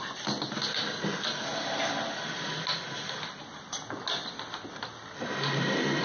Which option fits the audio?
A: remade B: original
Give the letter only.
B